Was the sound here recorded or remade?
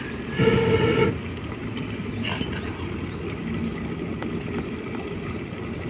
recorded